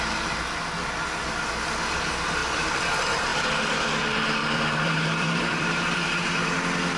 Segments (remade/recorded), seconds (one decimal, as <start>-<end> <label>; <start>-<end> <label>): 0.0-2.4 recorded; 2.4-2.9 remade; 2.9-3.3 recorded; 3.3-3.9 remade; 3.9-4.4 recorded; 4.4-6.2 remade; 6.2-7.0 recorded

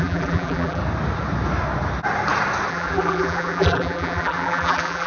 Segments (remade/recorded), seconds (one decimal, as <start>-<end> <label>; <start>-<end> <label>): 0.0-0.8 remade; 0.8-2.7 recorded; 2.7-5.1 remade